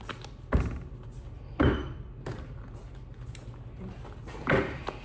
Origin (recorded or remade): recorded